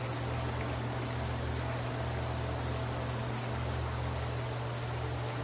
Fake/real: real